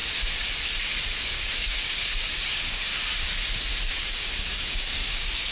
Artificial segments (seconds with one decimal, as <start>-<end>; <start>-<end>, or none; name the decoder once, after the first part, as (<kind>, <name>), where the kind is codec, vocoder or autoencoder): 1.2-2.9 (codec, DAC); 3.9-5.5